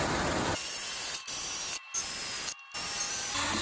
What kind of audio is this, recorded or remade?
recorded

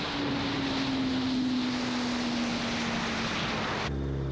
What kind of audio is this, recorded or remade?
recorded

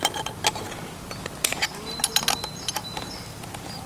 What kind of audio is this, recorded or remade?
recorded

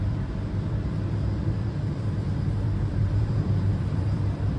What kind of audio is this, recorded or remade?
remade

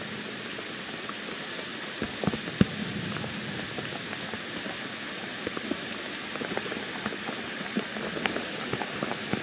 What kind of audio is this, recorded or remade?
recorded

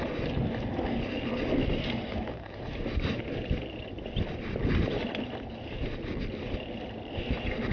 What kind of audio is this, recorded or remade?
recorded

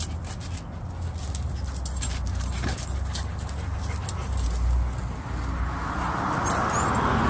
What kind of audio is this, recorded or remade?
recorded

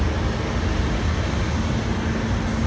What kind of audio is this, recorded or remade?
recorded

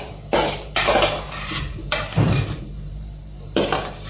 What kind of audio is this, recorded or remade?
remade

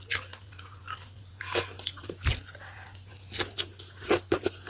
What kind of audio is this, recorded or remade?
recorded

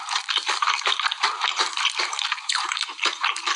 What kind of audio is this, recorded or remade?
remade